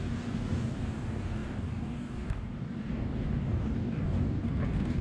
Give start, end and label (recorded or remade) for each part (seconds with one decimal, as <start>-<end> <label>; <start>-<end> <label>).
0.0-5.0 remade